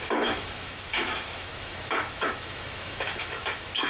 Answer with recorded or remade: remade